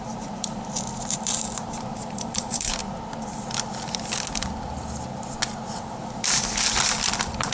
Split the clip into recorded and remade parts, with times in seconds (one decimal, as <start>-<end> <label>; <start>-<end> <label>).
0.0-2.8 remade; 2.8-7.5 recorded